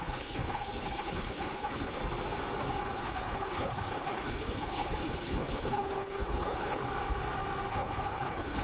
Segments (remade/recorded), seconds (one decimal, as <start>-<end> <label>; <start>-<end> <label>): 0.0-2.0 remade; 2.0-2.8 recorded; 2.8-6.8 remade; 6.8-7.7 recorded; 7.7-8.6 remade